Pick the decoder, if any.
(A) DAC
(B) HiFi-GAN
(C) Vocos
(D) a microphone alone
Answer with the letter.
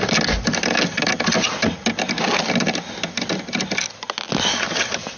D